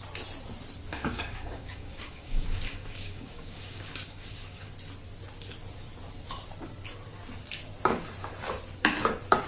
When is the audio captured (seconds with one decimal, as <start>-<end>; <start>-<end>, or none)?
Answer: 0.0-0.9; 4.7-9.5